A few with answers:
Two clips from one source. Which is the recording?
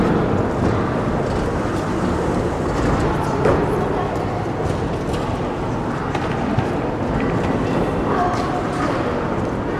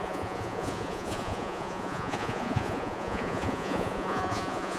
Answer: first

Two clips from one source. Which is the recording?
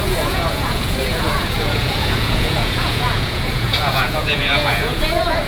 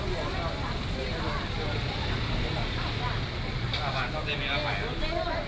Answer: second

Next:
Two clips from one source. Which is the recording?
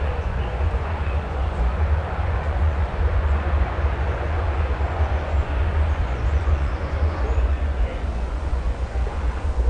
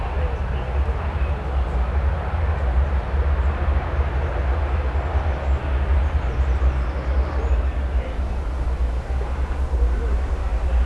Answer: second